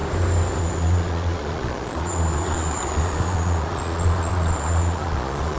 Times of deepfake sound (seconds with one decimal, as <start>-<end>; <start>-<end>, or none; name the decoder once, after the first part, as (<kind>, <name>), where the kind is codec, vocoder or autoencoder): 0.6-5.6 (vocoder, Vocos)